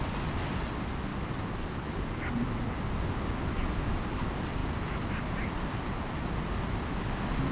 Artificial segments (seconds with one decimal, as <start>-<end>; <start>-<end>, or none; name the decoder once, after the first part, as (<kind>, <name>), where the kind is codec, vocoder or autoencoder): 1.1-2.3 (codec, DAC)